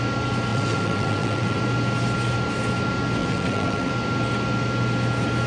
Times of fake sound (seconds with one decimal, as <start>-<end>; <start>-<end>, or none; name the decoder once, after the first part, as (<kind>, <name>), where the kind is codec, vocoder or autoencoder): 0.5-1.6 (vocoder, WaveNeXt); 3.2-3.9